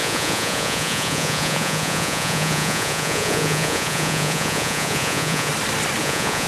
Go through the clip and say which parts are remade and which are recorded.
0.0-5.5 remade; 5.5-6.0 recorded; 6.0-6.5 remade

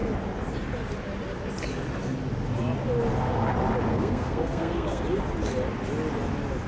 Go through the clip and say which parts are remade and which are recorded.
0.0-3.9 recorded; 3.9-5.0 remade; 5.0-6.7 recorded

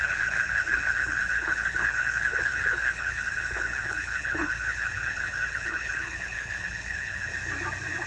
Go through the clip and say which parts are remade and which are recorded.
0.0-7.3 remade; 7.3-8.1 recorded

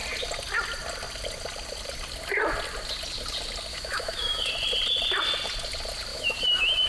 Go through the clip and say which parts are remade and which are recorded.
0.0-3.7 recorded; 3.7-4.5 remade; 4.5-6.1 recorded; 6.1-6.9 remade

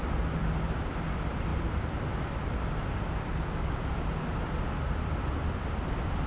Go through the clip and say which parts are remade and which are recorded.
0.0-6.3 recorded

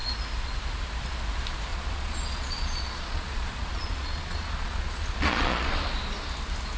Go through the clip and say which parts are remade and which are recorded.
0.0-1.7 recorded; 1.7-5.8 remade; 5.8-6.8 recorded

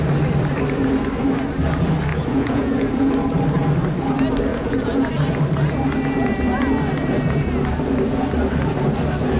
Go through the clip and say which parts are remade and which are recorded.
0.0-2.1 recorded; 2.1-3.1 remade; 3.1-4.5 recorded; 4.5-5.1 remade; 5.1-9.4 recorded

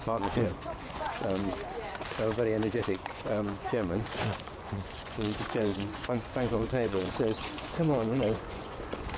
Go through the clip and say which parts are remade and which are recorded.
0.0-1.4 remade; 1.4-2.8 recorded; 2.8-9.2 remade